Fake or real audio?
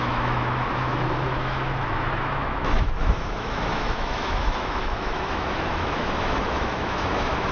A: fake